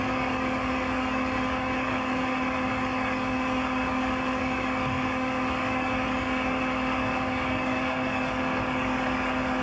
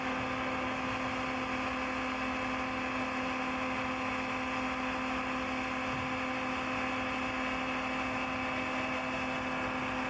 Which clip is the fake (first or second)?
first